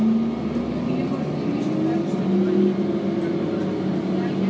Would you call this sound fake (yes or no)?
no